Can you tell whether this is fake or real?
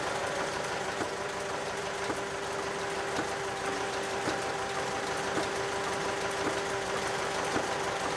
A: real